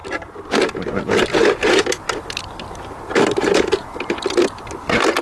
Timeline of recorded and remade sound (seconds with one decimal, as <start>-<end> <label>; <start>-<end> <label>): 0.0-5.2 recorded